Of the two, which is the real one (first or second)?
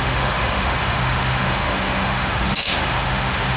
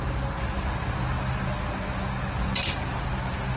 second